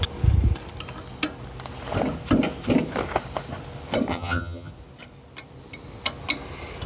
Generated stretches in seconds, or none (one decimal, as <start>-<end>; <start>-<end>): 4.1-4.7